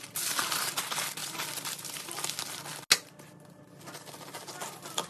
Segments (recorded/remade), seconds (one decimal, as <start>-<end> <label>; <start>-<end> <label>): 0.0-5.1 recorded